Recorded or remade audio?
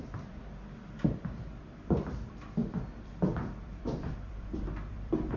remade